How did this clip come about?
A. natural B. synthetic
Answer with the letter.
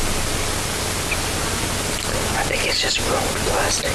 A